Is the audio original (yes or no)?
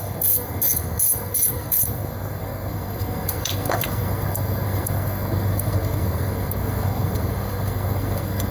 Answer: no